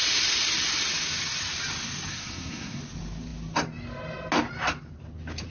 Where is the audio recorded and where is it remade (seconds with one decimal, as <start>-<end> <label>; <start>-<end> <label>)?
0.0-2.1 recorded; 2.1-2.8 remade; 2.8-5.5 recorded